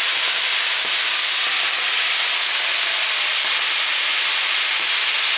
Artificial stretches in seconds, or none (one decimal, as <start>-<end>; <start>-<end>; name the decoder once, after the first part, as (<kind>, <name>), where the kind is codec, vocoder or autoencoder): none